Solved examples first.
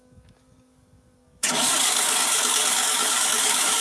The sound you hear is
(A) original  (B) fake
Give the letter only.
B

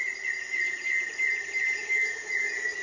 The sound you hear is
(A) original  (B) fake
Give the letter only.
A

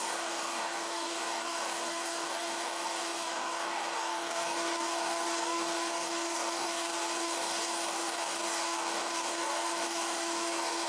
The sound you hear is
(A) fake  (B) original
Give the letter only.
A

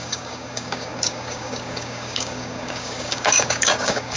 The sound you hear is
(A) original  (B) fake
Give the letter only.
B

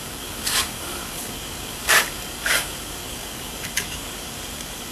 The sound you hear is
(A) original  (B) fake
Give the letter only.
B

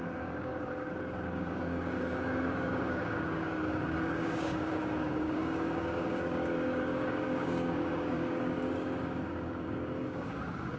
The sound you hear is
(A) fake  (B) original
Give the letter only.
A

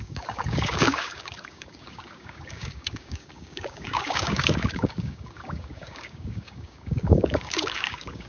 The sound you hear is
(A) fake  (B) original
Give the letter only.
A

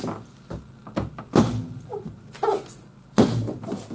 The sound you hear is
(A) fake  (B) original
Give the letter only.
B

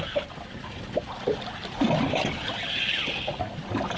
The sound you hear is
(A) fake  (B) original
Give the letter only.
B